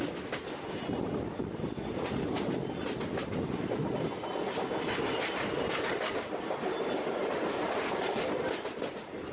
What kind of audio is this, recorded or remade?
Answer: recorded